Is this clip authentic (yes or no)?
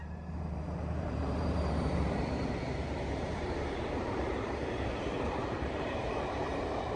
no